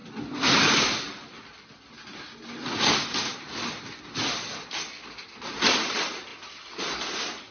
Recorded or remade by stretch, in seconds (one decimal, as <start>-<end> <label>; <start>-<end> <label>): 0.0-7.5 recorded